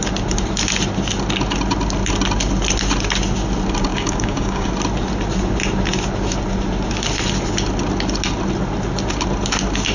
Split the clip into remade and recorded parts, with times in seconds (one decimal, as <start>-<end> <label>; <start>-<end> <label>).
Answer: 0.0-3.9 recorded; 3.9-4.7 remade; 4.7-9.9 recorded

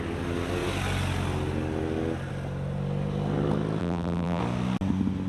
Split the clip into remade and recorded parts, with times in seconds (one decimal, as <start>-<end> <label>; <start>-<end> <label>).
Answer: 0.0-3.8 recorded; 3.8-4.4 remade; 4.4-5.3 recorded

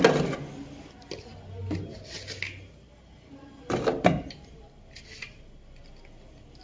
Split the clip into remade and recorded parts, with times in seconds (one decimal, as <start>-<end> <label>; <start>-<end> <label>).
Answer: 0.0-6.6 recorded

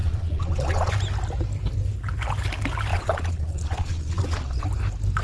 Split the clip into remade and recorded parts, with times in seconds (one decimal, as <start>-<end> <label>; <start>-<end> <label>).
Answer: 0.0-0.9 remade; 0.9-2.9 recorded; 2.9-4.6 remade; 4.6-5.2 recorded

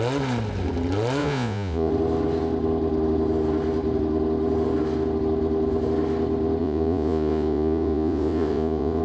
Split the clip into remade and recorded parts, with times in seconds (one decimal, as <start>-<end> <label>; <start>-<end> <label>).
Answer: 0.0-1.2 recorded; 1.2-1.9 remade; 1.9-6.6 recorded; 6.6-9.0 remade